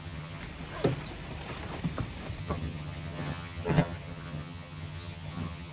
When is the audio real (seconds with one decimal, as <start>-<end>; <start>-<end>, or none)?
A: 0.4-2.4